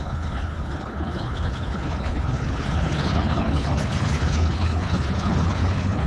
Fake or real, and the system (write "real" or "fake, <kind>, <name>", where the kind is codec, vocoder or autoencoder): fake, codec, HILCodec